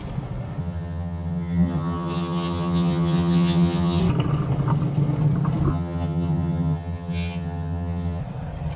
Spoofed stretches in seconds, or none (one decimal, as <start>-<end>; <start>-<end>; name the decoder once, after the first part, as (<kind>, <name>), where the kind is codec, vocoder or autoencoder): 0.6-4.0 (vocoder, HiFi-GAN); 5.7-8.2